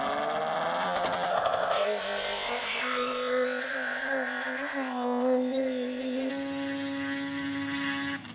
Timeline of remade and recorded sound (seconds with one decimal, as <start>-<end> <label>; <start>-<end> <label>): 0.0-1.3 recorded; 1.3-6.3 remade; 6.3-8.3 recorded